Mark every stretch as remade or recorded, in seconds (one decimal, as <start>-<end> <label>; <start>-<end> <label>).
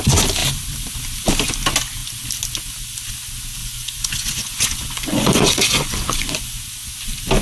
0.0-3.6 recorded; 3.6-6.6 remade; 6.6-7.4 recorded